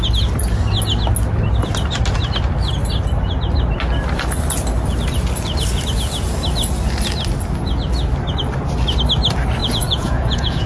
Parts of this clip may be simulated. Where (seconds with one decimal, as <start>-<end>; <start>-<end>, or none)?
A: 9.6-10.7